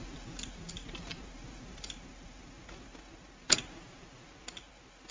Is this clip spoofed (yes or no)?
no